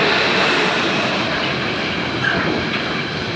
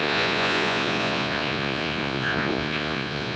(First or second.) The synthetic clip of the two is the second